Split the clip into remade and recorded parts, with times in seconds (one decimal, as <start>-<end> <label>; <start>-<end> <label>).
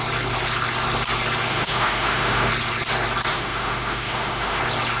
0.0-1.5 recorded; 1.5-2.5 remade; 2.5-3.3 recorded; 3.3-4.6 remade; 4.6-5.0 recorded